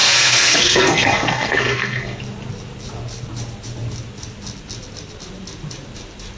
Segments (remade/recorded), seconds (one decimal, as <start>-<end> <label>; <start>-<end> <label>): 0.0-2.2 remade; 2.2-6.4 recorded